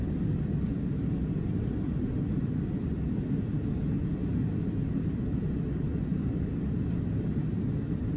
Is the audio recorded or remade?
recorded